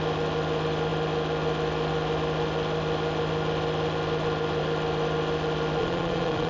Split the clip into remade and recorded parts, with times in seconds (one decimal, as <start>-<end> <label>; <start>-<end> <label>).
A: 0.0-5.8 recorded; 5.8-6.5 remade